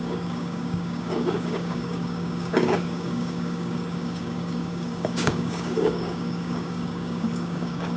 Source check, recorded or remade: remade